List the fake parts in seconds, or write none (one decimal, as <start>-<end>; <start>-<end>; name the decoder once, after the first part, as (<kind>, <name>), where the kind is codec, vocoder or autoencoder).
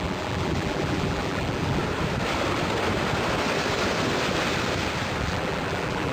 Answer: 0.0-1.8 (vocoder, BigVGAN v2); 5.2-6.1